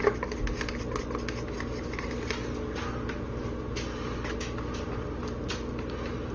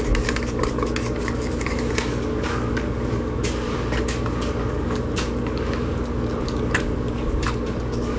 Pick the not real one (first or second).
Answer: second